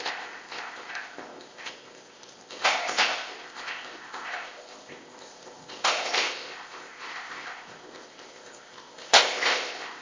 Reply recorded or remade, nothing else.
remade